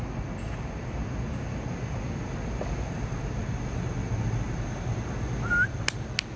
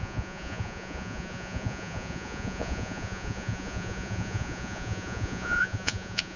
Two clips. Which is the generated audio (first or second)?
second